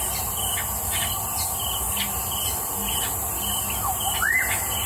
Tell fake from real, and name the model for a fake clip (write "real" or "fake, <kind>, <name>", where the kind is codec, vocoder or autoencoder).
real